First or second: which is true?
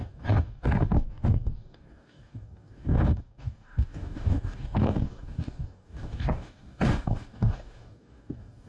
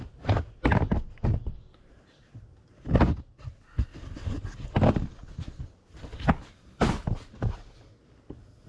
second